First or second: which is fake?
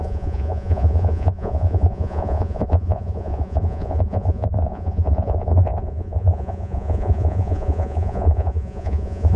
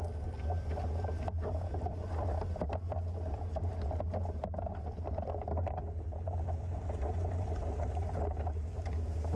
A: first